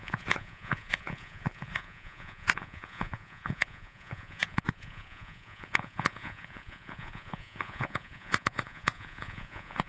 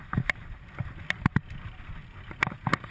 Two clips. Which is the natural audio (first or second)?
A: second